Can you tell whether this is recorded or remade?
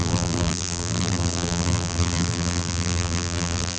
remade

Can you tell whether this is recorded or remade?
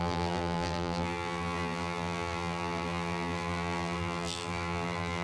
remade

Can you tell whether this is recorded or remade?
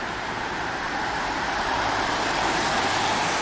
remade